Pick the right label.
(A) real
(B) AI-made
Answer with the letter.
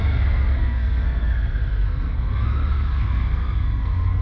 B